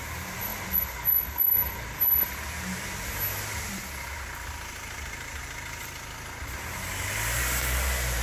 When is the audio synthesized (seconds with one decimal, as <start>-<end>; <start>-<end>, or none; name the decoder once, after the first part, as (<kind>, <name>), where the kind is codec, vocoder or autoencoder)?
none